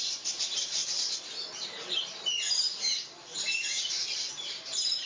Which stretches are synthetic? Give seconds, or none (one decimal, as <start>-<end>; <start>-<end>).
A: 0.0-0.8; 2.2-5.1